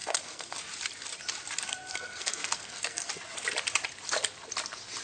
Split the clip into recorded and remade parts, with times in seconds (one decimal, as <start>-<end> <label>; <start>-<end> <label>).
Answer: 0.0-0.6 remade; 0.6-1.7 recorded; 1.7-3.1 remade; 3.1-5.0 recorded